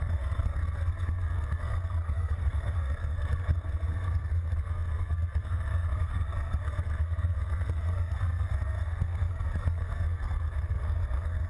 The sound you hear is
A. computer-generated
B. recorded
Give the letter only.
A